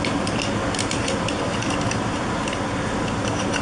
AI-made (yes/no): no